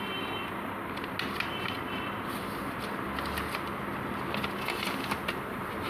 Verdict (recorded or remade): recorded